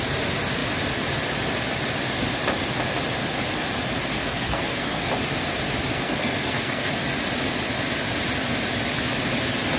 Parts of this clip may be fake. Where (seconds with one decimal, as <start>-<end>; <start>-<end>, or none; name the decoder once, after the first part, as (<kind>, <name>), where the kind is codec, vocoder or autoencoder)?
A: 4.1-5.1 (codec, SNAC); 5.9-6.9